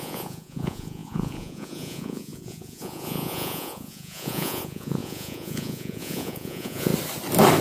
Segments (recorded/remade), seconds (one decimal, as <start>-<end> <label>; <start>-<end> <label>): 0.0-6.9 remade; 6.9-7.6 recorded